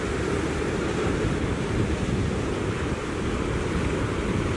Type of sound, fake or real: fake